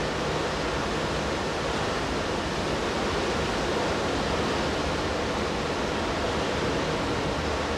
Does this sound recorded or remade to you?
recorded